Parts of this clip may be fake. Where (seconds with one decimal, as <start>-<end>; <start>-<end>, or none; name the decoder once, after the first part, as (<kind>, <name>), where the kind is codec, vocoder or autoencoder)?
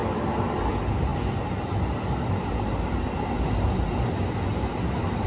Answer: none